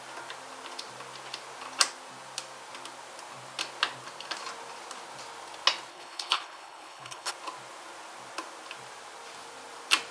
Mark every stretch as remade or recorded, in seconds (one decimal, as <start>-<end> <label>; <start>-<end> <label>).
0.0-5.9 recorded; 5.9-7.3 remade; 7.3-10.1 recorded